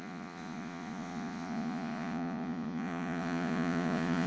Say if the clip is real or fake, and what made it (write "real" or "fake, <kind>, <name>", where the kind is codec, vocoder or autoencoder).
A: fake, vocoder, Vocos